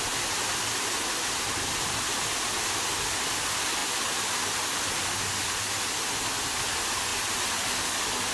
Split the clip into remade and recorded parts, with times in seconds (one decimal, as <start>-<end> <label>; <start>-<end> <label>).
0.0-8.3 recorded